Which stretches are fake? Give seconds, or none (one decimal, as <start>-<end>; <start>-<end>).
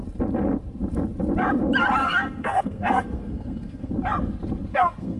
2.0-3.9; 4.7-5.2